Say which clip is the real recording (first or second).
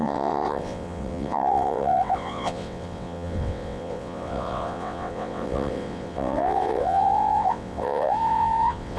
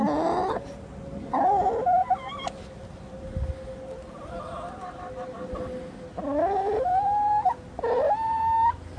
second